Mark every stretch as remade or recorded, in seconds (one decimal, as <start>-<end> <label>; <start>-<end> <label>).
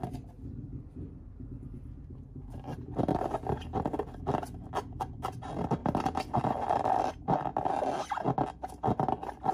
0.0-3.1 remade; 3.1-5.0 recorded; 5.0-5.8 remade; 5.8-7.1 recorded; 7.1-7.5 remade; 7.5-9.5 recorded